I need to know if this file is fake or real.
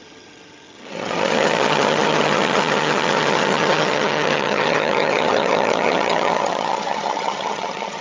fake